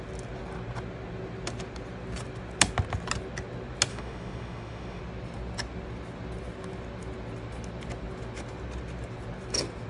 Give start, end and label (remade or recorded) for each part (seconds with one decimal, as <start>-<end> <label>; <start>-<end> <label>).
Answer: 0.0-3.9 recorded; 3.9-5.0 remade; 5.0-9.9 recorded